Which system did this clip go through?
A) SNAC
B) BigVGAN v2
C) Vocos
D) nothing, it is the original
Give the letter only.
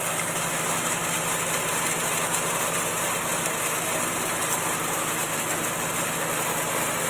D